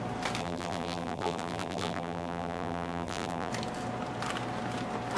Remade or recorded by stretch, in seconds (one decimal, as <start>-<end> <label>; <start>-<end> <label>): 0.0-0.4 recorded; 0.4-3.5 remade; 3.5-5.2 recorded